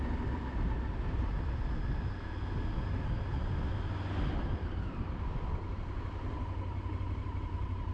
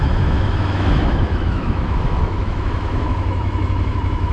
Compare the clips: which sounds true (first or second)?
first